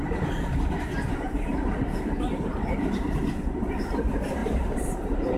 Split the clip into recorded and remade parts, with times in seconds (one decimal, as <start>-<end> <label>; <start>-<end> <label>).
0.0-4.4 recorded; 4.4-5.0 remade; 5.0-5.4 recorded